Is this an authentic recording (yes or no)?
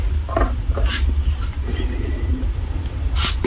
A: yes